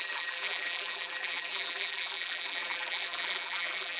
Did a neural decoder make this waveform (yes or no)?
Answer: yes